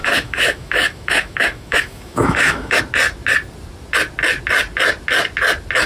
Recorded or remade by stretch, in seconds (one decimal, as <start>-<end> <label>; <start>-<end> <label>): 0.0-2.8 remade; 2.8-5.9 recorded